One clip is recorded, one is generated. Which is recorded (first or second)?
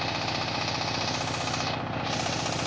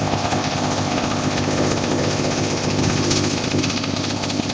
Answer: first